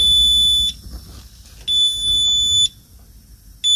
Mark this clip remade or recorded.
recorded